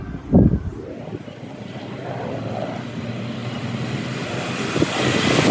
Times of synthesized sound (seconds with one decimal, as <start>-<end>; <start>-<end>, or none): none